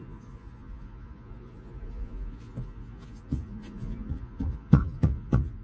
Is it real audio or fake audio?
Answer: fake